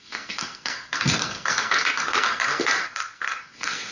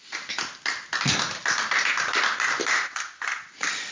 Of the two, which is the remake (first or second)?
first